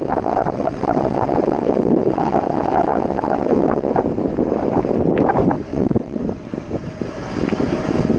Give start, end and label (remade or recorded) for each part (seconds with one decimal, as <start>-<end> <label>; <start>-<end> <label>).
0.0-3.9 remade; 3.9-5.7 recorded; 5.7-6.2 remade; 6.2-8.2 recorded